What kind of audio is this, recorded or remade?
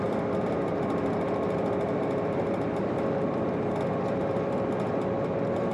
remade